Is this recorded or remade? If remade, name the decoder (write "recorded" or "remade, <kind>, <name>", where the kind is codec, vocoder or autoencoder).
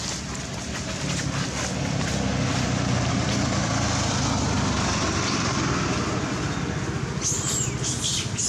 recorded